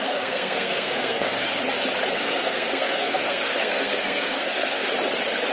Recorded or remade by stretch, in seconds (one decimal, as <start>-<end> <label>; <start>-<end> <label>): 0.0-1.5 remade; 1.5-2.1 recorded; 2.1-4.8 remade; 4.8-5.5 recorded